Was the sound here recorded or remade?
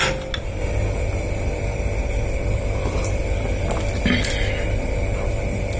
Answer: recorded